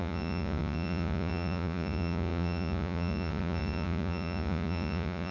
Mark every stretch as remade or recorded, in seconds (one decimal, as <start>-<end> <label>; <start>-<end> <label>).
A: 0.0-5.3 remade